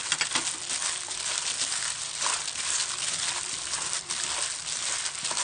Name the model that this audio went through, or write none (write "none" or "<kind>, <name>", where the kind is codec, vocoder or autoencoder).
none